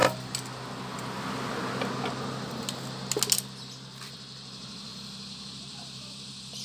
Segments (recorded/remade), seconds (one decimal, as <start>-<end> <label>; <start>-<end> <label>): 0.0-4.0 recorded; 4.0-6.6 remade